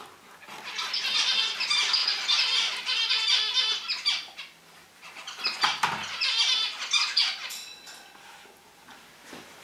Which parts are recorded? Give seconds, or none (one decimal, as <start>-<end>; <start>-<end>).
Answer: 0.0-2.0; 3.1-3.7; 5.4-7.4; 8.3-9.6